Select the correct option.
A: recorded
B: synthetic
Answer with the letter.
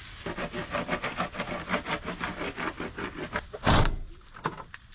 A